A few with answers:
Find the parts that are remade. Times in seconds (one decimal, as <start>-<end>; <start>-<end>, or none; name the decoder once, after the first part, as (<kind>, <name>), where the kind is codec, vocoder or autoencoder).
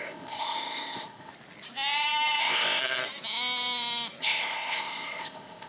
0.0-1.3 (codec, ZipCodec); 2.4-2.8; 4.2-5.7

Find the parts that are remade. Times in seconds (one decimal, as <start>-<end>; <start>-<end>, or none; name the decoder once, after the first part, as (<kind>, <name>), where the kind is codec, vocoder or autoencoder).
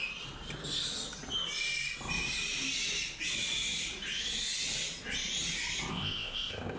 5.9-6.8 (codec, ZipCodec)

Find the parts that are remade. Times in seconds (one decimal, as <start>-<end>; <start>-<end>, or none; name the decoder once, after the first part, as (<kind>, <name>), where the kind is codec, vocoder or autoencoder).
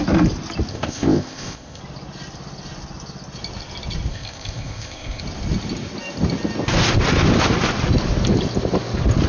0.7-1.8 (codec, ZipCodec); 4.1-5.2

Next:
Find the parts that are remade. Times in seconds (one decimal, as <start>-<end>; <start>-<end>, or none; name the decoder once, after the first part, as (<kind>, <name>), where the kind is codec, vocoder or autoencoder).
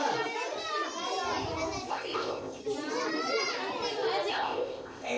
1.9-2.6 (codec, ZipCodec); 4.3-5.2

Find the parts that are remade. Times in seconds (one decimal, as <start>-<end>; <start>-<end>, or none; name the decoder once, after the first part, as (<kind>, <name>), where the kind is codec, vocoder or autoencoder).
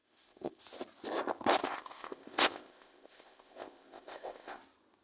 0.0-0.6 (codec, ZipCodec); 1.6-4.6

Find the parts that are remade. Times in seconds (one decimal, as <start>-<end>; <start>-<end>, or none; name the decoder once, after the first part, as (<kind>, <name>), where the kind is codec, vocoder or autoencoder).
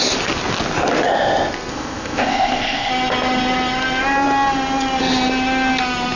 1.7-2.9 (codec, ZipCodec)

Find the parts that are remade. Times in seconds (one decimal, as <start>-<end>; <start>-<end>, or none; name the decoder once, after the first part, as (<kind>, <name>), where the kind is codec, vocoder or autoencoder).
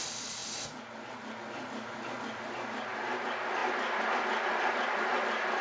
none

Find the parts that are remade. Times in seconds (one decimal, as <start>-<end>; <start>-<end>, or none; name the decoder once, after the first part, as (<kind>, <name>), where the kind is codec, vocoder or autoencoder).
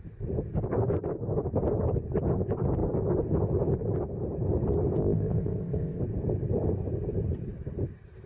5.0-6.0 (codec, ZipCodec)